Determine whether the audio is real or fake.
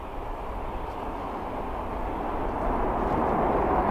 real